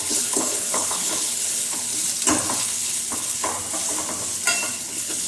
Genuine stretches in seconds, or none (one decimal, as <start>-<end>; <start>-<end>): 1.9-2.6; 3.5-4.8